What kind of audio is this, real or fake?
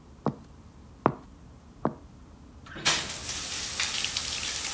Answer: real